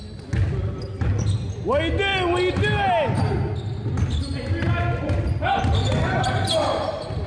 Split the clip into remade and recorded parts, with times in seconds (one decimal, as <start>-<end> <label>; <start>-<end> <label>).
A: 0.0-7.3 recorded